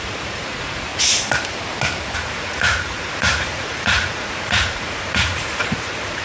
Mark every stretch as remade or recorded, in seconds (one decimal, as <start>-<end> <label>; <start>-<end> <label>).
0.0-0.9 remade; 0.9-2.2 recorded; 2.2-6.2 remade